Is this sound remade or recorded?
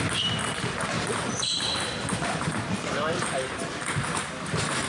recorded